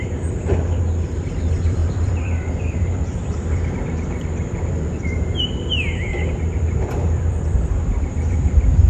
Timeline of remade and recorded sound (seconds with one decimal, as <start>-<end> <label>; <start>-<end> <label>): 0.0-8.9 remade